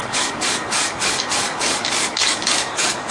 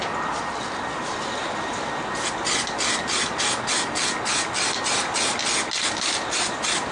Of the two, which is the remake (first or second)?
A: first